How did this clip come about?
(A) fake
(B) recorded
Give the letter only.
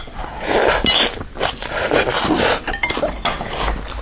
B